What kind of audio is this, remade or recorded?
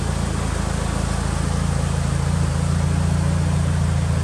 recorded